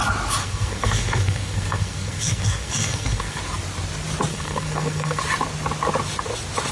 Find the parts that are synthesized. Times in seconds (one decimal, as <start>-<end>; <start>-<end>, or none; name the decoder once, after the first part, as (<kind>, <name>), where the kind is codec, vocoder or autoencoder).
0.4-3.4 (codec, SNAC); 4.3-5.2